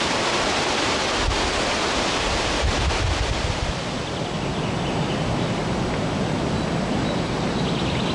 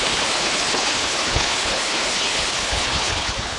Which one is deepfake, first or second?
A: second